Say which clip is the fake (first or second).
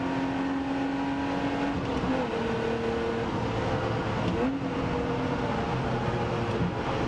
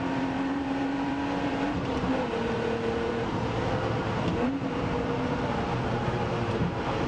second